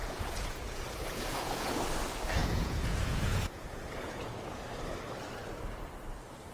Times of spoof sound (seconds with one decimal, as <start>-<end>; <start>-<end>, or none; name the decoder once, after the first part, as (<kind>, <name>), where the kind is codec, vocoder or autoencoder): 0.0-1.8 (vocoder, Vocos); 2.4-4.6